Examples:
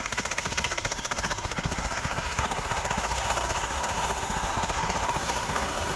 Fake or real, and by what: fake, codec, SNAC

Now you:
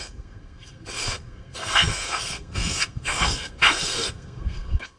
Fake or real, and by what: fake, codec, SNAC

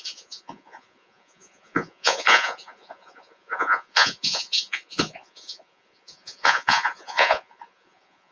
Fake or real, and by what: fake, vocoder, Vocos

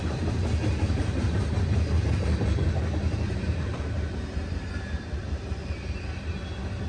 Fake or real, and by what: fake, vocoder, BigVGAN v2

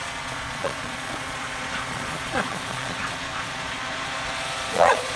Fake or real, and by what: fake, vocoder, Vocos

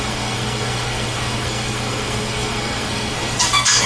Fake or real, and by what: fake, codec, SNAC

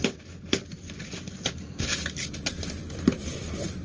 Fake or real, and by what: real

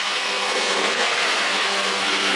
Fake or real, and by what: fake, codec, SNAC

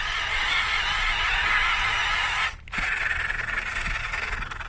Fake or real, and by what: real